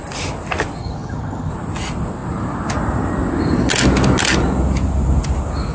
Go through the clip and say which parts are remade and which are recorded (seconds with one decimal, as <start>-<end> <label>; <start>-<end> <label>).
0.0-0.8 recorded; 0.8-1.5 remade; 1.5-5.7 recorded